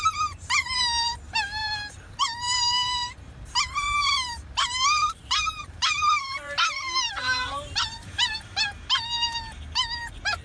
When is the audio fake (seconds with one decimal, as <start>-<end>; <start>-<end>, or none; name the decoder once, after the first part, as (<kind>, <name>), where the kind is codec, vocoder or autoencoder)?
1.6-3.4 (vocoder, BigVGAN v2); 4.0-8.9